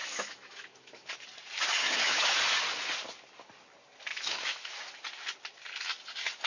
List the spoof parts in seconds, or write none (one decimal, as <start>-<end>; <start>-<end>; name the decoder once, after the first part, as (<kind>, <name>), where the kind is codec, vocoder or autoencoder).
0.0-1.1 (autoencoder, DAC-VAE); 1.8-2.4; 4.1-4.8